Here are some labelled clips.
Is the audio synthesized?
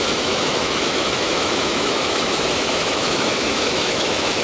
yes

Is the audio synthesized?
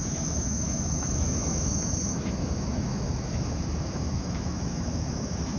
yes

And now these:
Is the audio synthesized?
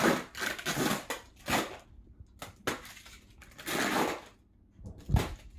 no